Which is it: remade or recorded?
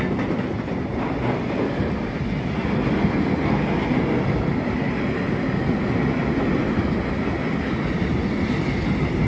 recorded